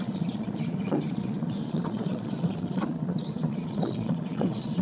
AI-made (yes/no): yes